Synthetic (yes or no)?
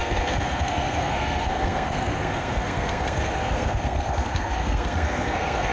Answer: yes